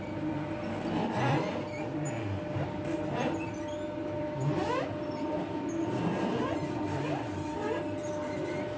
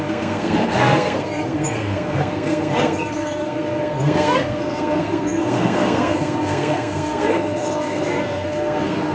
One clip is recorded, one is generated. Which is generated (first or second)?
second